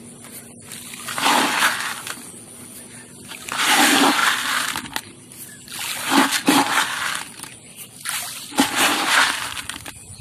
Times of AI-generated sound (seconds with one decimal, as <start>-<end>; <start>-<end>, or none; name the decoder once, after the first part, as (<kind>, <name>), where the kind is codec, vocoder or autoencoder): none